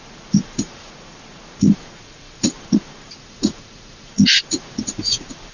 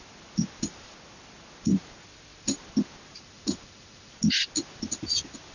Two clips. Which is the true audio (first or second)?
second